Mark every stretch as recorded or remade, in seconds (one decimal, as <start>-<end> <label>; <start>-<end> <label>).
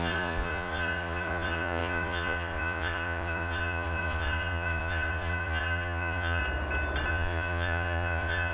0.0-6.4 remade; 6.4-7.1 recorded; 7.1-8.5 remade